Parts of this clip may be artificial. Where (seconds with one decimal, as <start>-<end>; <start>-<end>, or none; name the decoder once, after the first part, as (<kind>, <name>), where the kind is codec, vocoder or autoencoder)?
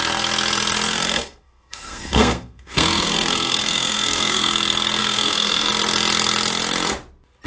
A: 0.9-4.5 (codec, SNAC); 5.0-5.7